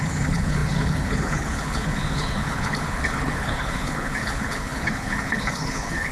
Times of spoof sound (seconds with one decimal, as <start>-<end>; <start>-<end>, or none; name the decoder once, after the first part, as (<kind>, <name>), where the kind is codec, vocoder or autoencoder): 0.0-6.1 (codec, HILCodec)